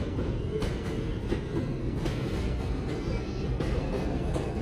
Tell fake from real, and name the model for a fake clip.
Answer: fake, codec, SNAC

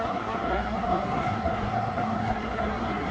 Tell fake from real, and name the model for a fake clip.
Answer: fake, codec, SNAC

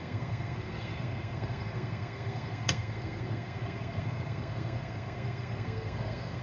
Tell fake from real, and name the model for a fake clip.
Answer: fake, codec, SNAC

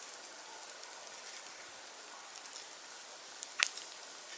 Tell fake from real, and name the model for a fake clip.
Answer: real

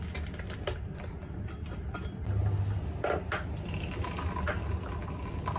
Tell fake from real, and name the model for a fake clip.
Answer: real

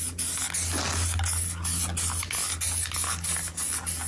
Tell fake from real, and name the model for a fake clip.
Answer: real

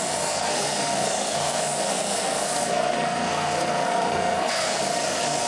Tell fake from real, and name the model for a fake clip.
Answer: fake, codec, SNAC